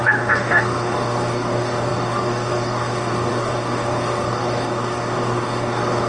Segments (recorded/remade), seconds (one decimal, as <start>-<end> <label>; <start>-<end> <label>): 0.0-6.1 remade

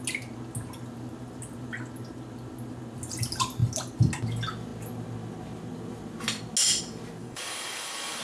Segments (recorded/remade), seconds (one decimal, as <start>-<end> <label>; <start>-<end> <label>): 0.0-7.2 recorded; 7.2-8.2 remade

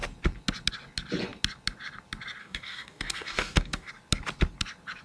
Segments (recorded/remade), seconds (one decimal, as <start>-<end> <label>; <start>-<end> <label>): 0.0-2.4 recorded; 2.4-3.9 remade; 3.9-5.0 recorded

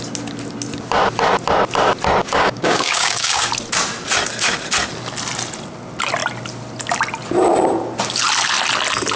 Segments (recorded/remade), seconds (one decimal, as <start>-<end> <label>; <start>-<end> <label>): 0.0-2.2 recorded; 2.2-3.5 remade; 3.5-9.2 recorded

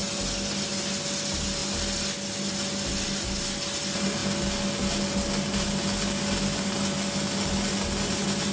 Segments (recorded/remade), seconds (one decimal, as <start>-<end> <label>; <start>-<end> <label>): 0.0-8.5 recorded

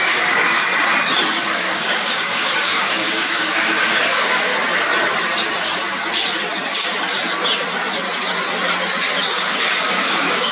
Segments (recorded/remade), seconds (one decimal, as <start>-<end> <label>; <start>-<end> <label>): 0.0-0.6 remade; 0.6-1.4 recorded; 1.4-4.5 remade; 4.5-9.3 recorded; 9.3-10.5 remade